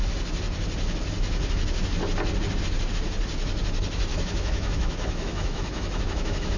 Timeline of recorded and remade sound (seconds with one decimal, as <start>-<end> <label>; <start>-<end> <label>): 0.0-4.1 recorded; 4.1-6.6 remade